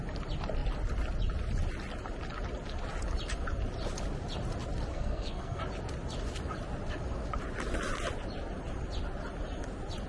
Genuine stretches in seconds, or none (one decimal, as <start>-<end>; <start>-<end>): 0.0-4.9; 5.6-10.1